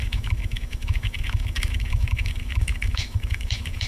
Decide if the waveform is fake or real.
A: fake